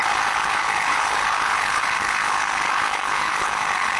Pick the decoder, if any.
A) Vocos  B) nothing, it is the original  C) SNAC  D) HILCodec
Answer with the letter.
D